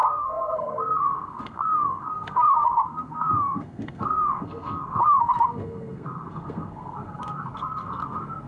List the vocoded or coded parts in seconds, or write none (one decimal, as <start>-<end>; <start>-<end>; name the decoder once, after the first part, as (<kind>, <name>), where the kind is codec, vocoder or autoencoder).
0.0-8.5 (codec, SNAC)